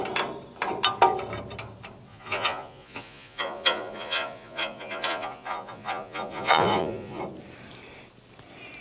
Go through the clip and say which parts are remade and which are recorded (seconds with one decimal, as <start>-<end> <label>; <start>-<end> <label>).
0.0-2.1 recorded; 2.1-7.2 remade; 7.2-8.8 recorded